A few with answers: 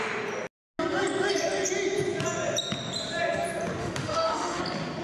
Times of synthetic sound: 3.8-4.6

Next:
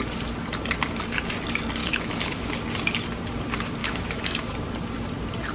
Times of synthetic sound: 1.8-2.5; 3.8-4.5

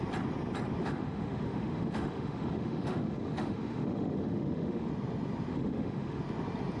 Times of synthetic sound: 0.8-4.9; 5.5-6.2

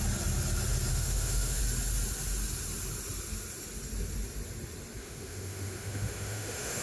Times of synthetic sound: 0.9-1.6; 5.0-6.8

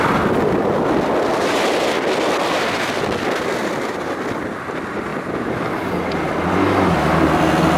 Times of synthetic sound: none